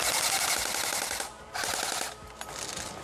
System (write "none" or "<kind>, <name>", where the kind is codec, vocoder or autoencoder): none